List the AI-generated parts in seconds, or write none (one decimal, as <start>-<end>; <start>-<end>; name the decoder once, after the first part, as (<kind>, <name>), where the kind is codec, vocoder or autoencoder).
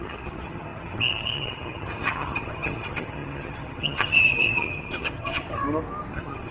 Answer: 0.0-5.6 (vocoder, HiFi-GAN); 6.1-6.5